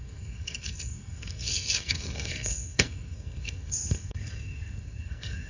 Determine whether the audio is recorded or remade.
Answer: remade